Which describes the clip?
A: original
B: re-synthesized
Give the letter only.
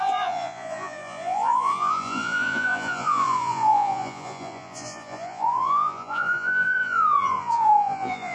B